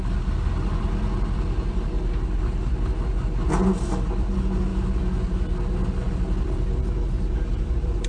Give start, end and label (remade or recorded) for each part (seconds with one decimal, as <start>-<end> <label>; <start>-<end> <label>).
0.0-8.1 recorded